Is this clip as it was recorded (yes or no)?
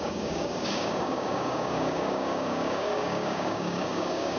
no